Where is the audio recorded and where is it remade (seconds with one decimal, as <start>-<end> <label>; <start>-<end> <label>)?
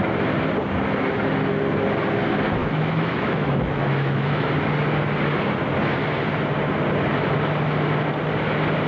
0.0-2.6 recorded; 2.6-4.5 remade; 4.5-8.9 recorded